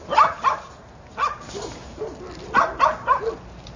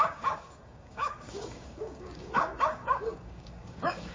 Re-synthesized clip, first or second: second